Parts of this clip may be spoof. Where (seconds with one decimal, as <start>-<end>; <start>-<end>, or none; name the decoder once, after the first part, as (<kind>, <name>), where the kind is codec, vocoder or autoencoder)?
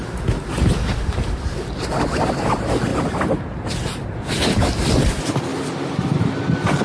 none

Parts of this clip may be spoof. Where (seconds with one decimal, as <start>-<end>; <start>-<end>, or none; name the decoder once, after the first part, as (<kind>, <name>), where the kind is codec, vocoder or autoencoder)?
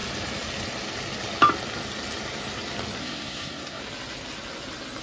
3.0-3.8 (codec, SNAC)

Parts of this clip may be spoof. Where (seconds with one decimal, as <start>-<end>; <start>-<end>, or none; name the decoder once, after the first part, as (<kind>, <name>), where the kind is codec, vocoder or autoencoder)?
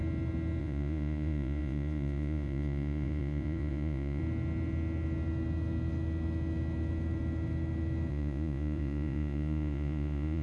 0.6-4.2 (vocoder, Vocos); 8.1-10.4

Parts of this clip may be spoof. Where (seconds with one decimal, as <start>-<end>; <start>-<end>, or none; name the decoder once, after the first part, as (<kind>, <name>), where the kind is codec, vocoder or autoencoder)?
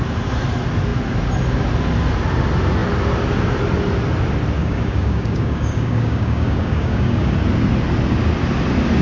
4.6-7.3 (codec, DAC)